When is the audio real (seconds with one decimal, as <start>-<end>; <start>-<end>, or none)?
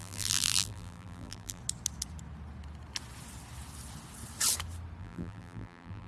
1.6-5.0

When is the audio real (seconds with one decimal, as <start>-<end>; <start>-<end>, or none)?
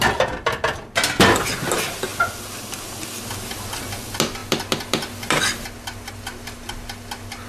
0.0-7.5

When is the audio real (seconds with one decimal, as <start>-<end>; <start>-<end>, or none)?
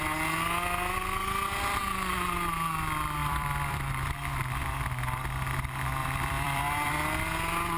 0.0-3.2; 3.9-6.0; 6.6-7.8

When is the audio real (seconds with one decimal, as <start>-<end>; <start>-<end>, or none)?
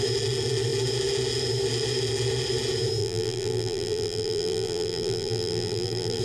0.0-3.0